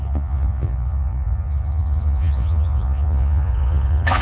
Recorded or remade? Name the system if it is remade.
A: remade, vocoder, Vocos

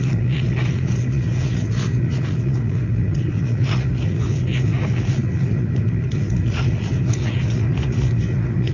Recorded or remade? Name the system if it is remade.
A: remade, vocoder, Vocos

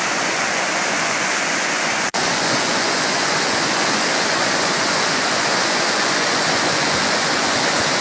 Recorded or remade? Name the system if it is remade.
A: remade, vocoder, Vocos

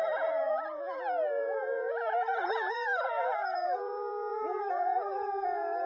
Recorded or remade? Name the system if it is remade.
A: remade, vocoder, Vocos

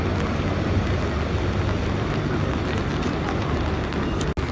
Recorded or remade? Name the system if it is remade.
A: recorded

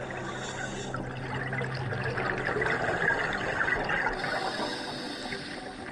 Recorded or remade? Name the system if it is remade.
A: recorded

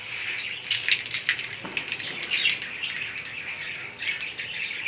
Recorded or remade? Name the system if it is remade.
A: recorded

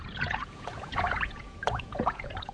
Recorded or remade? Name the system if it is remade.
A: remade, vocoder, Vocos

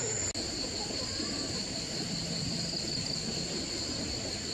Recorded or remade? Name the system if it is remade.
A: recorded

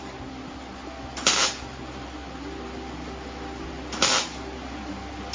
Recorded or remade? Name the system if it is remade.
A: recorded